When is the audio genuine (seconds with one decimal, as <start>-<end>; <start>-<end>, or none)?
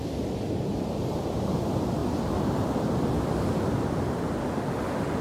0.0-2.0; 3.9-5.2